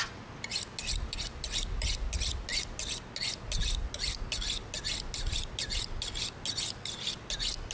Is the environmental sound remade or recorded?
recorded